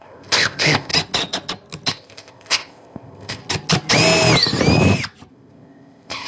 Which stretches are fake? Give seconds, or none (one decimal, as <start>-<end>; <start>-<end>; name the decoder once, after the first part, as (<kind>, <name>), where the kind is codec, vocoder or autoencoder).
0.0-0.9 (codec, ZipCodec); 1.9-3.4; 5.3-6.3